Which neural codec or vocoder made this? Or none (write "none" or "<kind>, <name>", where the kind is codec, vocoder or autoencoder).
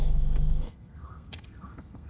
codec, SNAC